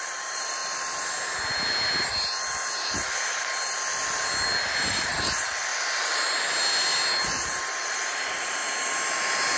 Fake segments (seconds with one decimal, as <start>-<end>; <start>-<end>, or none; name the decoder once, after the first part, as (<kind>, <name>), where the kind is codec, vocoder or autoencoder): 0.0-0.6 (vocoder, BigVGAN v2); 4.9-5.7; 7.3-8.6